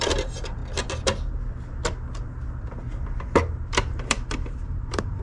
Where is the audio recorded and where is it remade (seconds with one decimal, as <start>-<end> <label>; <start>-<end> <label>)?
0.0-0.6 remade; 0.6-3.7 recorded; 3.7-5.2 remade